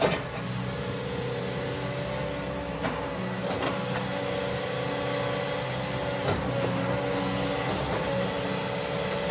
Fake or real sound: real